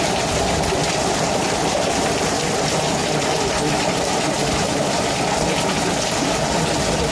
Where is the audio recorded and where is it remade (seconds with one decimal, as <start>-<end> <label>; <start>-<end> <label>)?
0.0-7.1 recorded